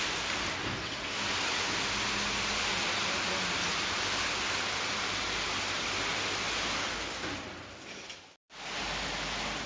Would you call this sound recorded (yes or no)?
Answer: yes